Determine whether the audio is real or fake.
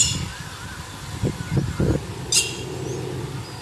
real